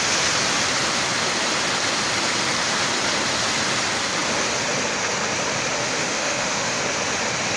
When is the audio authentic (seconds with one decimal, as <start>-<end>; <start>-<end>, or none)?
0.0-5.8; 6.8-7.6